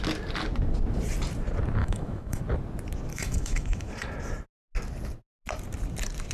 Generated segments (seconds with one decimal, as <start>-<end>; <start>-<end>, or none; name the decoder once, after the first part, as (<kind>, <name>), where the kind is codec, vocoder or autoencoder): 1.8-2.4 (autoencoder, DAC-VAE); 3.1-3.9